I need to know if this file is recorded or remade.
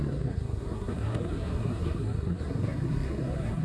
remade